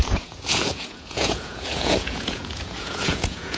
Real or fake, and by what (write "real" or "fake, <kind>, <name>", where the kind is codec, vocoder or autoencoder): fake, vocoder, Vocos